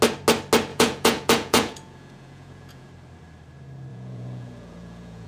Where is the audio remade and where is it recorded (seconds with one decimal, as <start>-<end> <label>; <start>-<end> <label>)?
0.0-0.7 recorded; 0.7-2.9 remade; 2.9-3.9 recorded; 3.9-5.3 remade